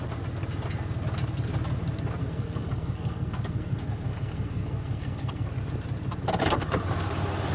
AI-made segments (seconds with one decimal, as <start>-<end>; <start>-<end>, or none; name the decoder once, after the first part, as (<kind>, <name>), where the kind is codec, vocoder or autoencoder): 2.2-5.5 (codec, SNAC)